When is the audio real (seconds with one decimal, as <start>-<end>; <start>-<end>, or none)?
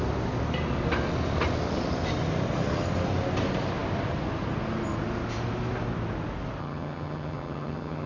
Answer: 0.0-6.6